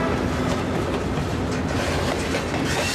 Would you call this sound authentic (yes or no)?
yes